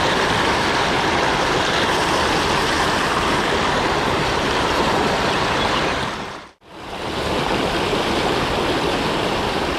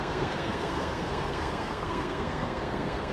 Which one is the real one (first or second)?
first